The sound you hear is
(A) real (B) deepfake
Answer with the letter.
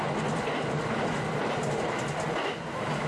A